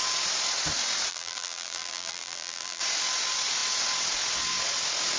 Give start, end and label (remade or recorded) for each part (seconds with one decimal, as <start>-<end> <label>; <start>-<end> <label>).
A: 0.0-1.1 recorded; 1.1-2.8 remade; 2.8-5.2 recorded